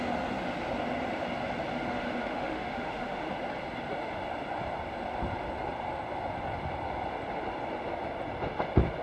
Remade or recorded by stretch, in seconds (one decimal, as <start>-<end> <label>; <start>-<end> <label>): 0.0-1.9 recorded; 1.9-3.3 remade; 3.3-9.0 recorded